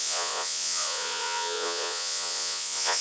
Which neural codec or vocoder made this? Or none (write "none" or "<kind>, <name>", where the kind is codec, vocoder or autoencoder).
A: vocoder, Vocos